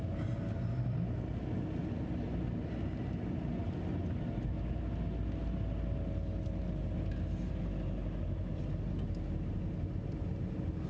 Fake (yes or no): no